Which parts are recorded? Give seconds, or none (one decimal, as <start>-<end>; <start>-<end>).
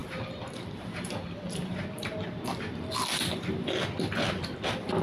2.4-5.0